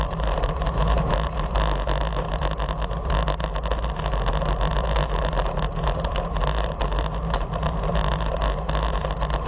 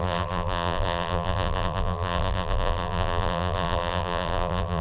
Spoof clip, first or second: second